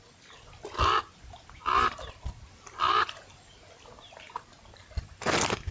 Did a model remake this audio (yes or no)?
no